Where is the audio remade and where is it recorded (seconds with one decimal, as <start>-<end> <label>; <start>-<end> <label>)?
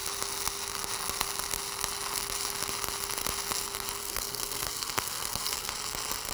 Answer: 0.0-4.0 recorded; 4.0-5.7 remade; 5.7-6.3 recorded